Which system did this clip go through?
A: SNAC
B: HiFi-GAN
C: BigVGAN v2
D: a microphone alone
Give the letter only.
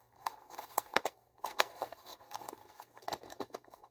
A